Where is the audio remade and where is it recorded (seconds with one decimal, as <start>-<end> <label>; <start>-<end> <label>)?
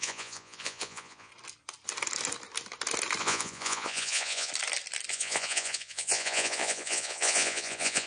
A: 0.0-1.3 remade; 1.3-3.2 recorded; 3.2-4.5 remade; 4.5-5.1 recorded; 5.1-8.1 remade